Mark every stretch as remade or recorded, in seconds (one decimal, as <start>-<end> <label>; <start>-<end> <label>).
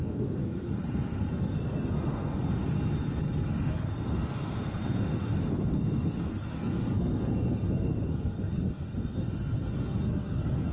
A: 0.0-2.3 remade; 2.3-3.2 recorded; 3.2-10.7 remade